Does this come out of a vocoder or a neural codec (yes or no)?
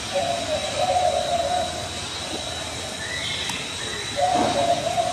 no